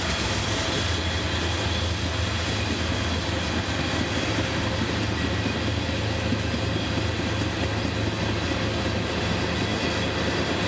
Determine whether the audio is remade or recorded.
recorded